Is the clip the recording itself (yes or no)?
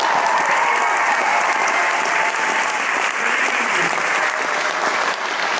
yes